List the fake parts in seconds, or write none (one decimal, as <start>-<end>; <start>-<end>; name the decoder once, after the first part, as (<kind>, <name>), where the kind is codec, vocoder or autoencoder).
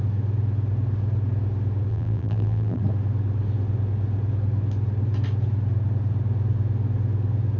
1.9-2.8 (vocoder, BigVGAN v2)